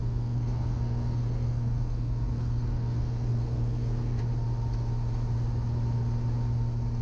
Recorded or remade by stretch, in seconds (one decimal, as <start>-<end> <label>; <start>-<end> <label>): 0.0-4.2 remade; 4.2-7.0 recorded